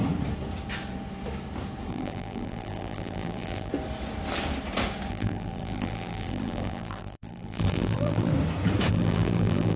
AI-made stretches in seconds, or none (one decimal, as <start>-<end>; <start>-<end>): 1.9-3.7; 5.1-8.3; 8.9-9.8